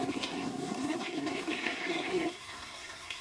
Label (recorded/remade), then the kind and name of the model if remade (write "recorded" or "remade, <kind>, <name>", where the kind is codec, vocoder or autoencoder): remade, codec, SNAC